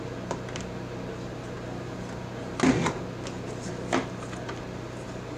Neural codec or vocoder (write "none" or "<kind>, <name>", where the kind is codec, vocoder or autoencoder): none